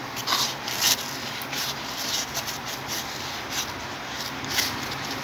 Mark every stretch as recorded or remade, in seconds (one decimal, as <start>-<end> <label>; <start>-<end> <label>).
0.0-5.2 recorded